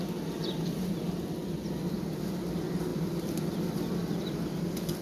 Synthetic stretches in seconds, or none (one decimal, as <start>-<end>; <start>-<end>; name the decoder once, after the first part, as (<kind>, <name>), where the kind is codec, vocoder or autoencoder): none

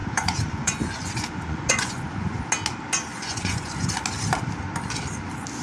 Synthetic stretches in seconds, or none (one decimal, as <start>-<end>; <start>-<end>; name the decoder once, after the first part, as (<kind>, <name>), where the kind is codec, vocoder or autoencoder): 0.0-2.4 (vocoder, Vocos); 3.1-4.0

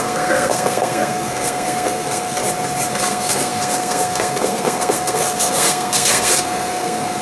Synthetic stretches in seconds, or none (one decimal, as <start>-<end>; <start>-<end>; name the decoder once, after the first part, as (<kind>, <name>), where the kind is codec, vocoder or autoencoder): 0.0-2.4 (codec, SNAC); 2.9-7.2

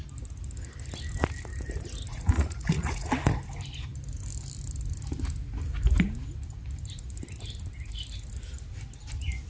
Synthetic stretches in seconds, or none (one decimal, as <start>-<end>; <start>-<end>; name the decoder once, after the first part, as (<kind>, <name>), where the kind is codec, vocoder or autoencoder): 2.1-3.1 (vocoder, Vocos)

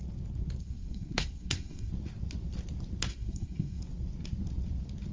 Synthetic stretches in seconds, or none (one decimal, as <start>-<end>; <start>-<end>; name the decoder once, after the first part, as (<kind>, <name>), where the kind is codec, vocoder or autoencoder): 0.6-1.9 (codec, SNAC); 3.1-3.8

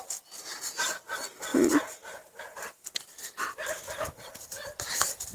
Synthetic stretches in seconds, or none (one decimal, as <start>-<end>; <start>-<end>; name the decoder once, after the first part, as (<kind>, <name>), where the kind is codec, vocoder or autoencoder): 1.5-3.5 (vocoder, BigVGAN v2)